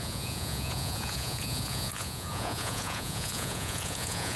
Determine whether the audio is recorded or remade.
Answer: remade